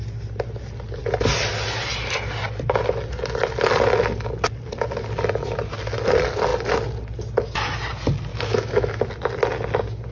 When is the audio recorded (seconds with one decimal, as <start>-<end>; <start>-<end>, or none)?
0.0-8.3; 9.0-10.1